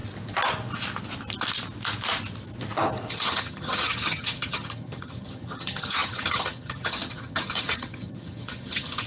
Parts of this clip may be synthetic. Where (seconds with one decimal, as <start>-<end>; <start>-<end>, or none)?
3.1-9.1